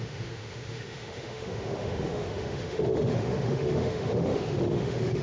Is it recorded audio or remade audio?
remade